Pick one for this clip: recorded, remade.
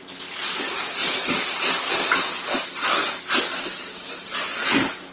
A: remade